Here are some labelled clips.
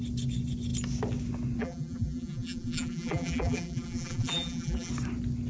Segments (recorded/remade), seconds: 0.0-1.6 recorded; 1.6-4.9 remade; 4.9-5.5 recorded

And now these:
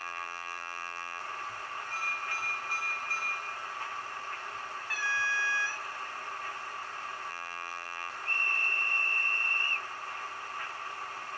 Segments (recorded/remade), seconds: 0.0-1.2 remade; 1.2-7.3 recorded; 7.3-8.1 remade; 8.1-11.4 recorded